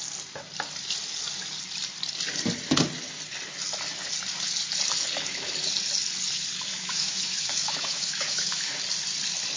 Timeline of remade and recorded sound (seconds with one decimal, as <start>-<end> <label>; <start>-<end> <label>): 0.0-6.7 recorded; 6.7-8.8 remade; 8.8-9.6 recorded